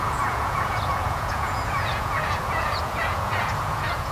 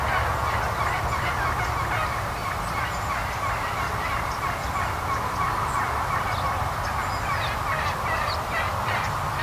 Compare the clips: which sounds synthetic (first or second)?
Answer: first